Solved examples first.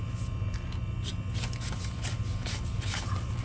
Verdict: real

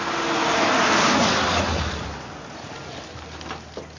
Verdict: real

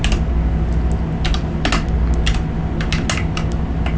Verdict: real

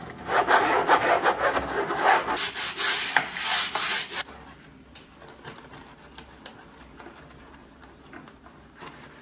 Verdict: real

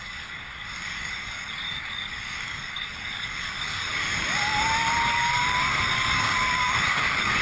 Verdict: fake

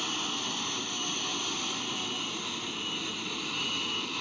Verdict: real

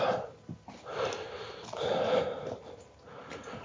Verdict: real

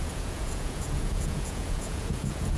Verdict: fake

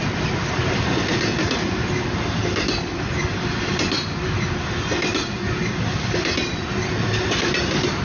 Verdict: real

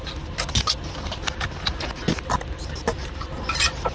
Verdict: real